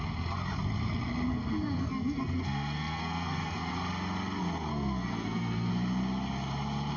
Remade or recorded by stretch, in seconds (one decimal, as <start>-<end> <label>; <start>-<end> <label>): 0.0-1.3 recorded; 1.3-3.7 remade; 3.7-4.7 recorded; 4.7-5.7 remade; 5.7-7.0 recorded